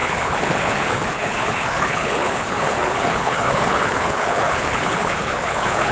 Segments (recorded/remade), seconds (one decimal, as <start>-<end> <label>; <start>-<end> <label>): 0.0-5.9 remade

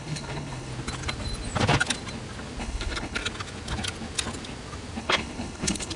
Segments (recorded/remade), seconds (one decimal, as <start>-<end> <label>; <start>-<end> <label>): 0.0-0.7 remade; 0.7-2.6 recorded; 2.6-3.2 remade; 3.2-5.0 recorded; 5.0-6.0 remade

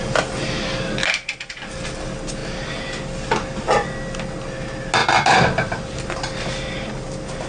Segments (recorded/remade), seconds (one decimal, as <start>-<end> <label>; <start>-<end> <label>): 0.0-7.5 recorded